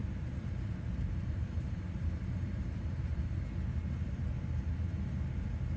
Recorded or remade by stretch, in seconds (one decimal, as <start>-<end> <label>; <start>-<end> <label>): 0.0-3.4 remade; 3.4-5.8 recorded